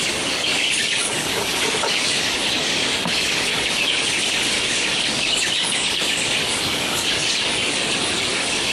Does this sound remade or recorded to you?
remade